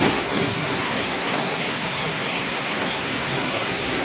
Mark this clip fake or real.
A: fake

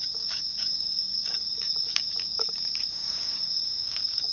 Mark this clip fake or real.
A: fake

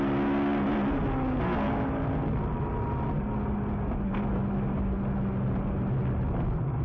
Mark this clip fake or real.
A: real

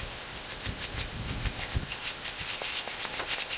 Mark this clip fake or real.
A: fake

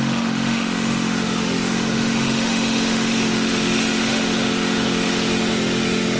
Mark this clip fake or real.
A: fake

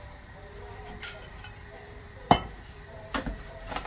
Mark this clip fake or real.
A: fake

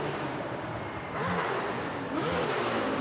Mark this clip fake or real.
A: real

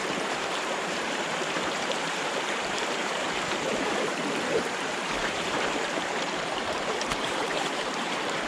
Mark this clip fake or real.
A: fake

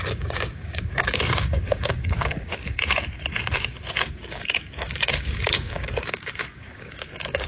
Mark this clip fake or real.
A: fake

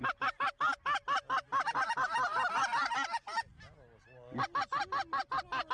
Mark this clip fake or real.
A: real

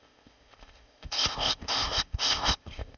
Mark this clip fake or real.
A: fake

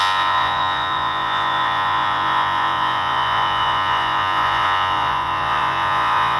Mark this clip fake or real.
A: fake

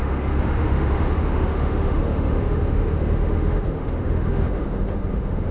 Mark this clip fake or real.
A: fake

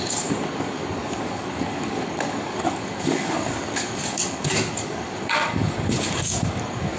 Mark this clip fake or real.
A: fake